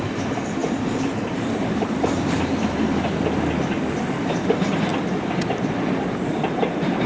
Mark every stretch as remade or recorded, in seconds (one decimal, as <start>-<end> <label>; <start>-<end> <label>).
0.0-2.8 remade; 2.8-4.2 recorded; 4.2-4.9 remade; 4.9-6.0 recorded; 6.0-7.1 remade